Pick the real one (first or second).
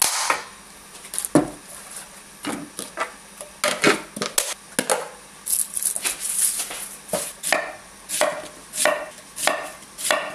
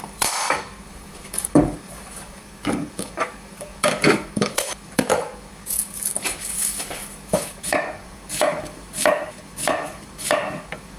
first